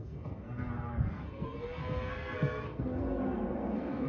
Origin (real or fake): fake